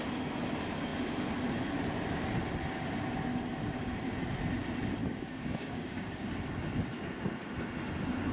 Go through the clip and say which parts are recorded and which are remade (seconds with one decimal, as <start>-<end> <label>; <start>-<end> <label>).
0.0-5.0 recorded; 5.0-6.3 remade; 6.3-8.3 recorded